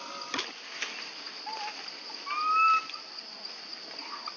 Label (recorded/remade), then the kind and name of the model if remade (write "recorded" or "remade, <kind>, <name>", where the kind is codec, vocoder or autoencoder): recorded